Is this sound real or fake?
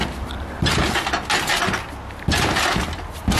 real